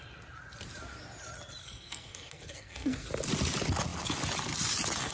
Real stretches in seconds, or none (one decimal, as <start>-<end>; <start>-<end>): 0.0-1.6; 3.1-5.1